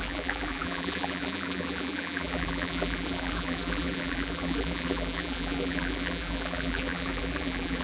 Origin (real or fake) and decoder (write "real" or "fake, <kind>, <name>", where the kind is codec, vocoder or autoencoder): fake, vocoder, BigVGAN v2